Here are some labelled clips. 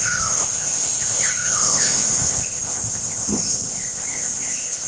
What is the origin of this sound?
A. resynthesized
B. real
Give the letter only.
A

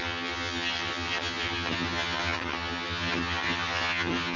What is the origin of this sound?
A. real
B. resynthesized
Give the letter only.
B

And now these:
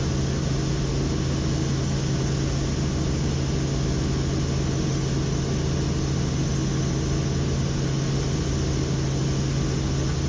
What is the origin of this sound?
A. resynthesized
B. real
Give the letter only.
B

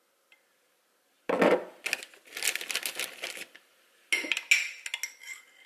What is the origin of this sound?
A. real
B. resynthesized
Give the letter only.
A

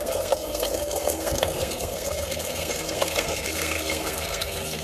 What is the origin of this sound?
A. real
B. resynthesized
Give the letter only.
B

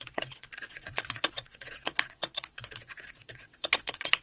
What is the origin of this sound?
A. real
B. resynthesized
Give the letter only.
B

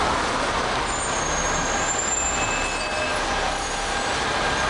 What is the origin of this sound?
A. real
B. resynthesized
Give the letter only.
A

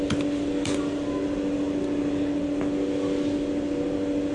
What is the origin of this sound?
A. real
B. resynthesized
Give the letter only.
A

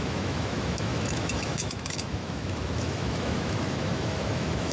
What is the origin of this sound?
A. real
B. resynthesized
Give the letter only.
B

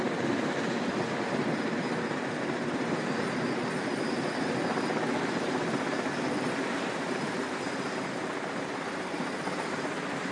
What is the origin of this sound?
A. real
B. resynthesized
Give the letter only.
B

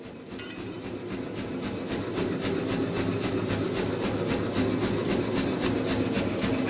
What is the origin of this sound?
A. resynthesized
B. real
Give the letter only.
B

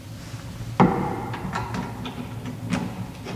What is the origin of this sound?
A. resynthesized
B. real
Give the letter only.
B